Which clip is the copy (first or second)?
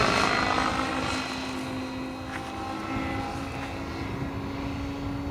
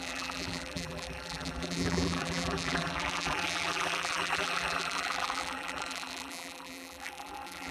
second